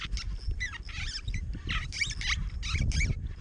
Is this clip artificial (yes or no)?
no